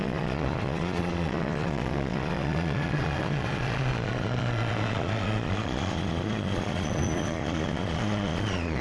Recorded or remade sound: remade